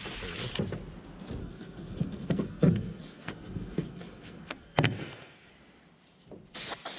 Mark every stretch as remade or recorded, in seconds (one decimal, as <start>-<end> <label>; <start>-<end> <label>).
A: 0.0-1.4 recorded; 1.4-5.5 remade; 5.5-7.0 recorded